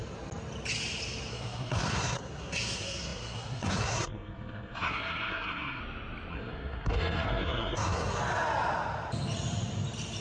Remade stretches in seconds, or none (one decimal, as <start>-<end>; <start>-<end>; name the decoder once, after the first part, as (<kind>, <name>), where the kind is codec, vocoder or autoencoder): 1.3-5.8 (codec, SNAC); 6.3-8.2